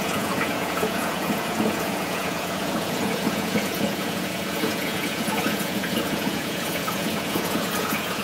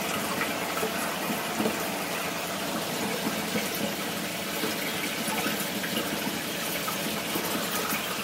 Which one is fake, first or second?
first